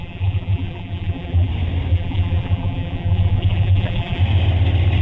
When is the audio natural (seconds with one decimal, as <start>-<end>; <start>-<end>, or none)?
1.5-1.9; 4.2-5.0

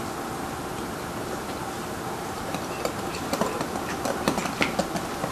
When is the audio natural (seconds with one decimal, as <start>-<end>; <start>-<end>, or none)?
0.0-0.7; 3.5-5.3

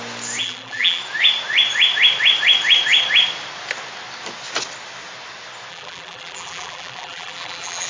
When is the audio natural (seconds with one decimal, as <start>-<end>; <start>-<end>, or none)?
0.0-0.4; 1.0-5.7

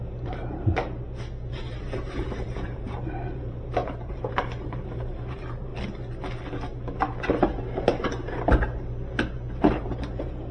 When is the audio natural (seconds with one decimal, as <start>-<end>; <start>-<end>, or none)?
0.8-1.5; 5.7-9.6

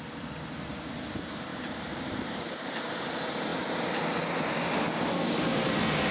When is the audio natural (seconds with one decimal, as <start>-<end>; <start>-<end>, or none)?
0.0-1.5; 2.9-6.1

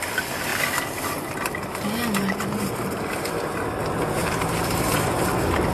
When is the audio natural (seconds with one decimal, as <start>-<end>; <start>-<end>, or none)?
0.0-4.2; 5.3-5.7

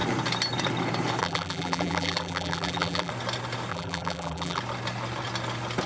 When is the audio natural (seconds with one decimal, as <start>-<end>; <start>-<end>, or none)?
0.0-1.2; 3.1-3.7; 4.6-5.9

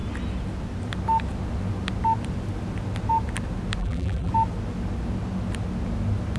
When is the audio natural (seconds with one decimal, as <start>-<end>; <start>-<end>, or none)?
0.0-3.8; 4.3-6.4